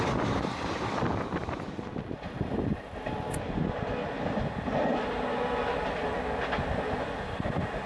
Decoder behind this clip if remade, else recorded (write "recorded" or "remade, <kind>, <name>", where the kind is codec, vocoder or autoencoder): recorded